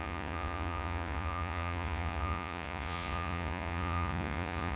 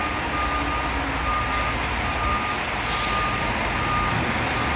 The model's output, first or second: first